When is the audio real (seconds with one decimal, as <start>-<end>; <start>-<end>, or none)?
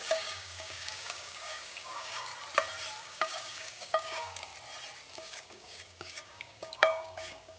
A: 2.3-3.0; 4.5-5.1